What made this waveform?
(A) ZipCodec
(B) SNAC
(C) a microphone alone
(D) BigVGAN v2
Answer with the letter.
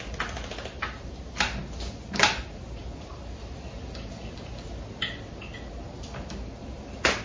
C